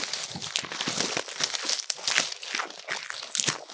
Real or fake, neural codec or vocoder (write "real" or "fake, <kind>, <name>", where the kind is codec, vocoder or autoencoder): real